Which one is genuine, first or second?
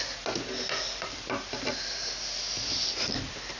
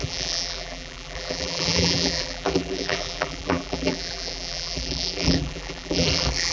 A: first